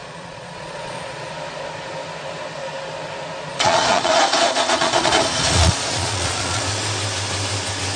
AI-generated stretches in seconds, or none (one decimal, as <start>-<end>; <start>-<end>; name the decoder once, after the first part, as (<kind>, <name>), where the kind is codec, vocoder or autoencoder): 0.0-1.3 (vocoder, Vocos); 3.5-6.6